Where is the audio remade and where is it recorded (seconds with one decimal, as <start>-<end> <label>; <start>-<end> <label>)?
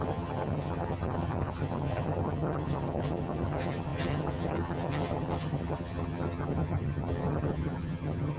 0.0-8.4 remade